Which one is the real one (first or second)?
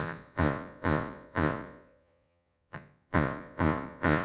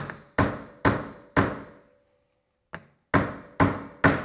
second